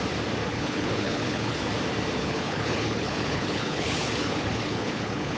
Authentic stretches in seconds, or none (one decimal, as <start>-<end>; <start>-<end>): 0.0-0.5; 1.7-2.2